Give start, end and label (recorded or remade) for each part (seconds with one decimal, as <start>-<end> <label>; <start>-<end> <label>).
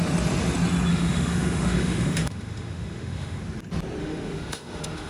0.0-0.9 recorded; 0.9-3.4 remade; 3.4-4.0 recorded; 4.0-5.1 remade